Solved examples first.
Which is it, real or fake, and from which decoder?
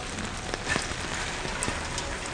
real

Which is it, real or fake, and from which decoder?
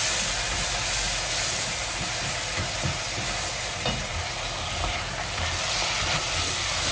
real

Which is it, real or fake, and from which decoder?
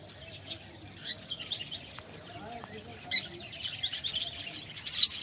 real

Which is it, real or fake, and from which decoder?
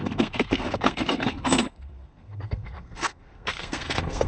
fake, codec, SNAC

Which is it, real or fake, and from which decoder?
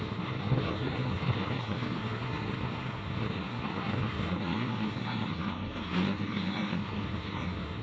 fake, codec, SNAC